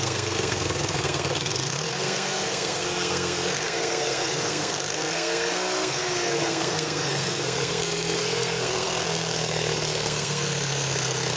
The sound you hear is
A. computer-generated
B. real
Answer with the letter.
A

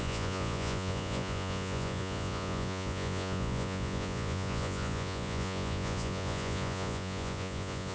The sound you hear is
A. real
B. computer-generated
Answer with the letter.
B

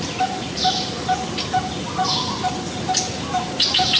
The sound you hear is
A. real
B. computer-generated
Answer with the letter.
A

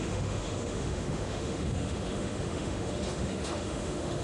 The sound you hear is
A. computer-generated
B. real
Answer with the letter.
A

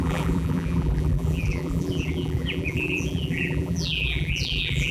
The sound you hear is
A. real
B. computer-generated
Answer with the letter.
B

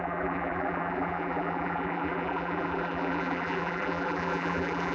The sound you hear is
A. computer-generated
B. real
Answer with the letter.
A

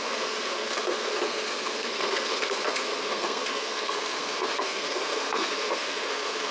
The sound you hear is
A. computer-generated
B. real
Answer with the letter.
A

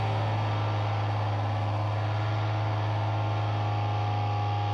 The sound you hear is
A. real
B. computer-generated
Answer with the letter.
A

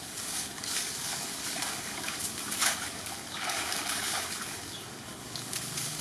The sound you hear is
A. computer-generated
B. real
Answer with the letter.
A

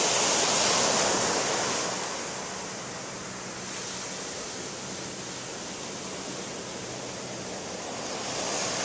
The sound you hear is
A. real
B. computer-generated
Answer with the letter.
A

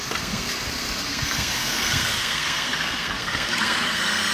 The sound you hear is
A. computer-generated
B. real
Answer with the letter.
A